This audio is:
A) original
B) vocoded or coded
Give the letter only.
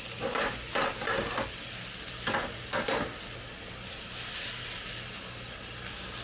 A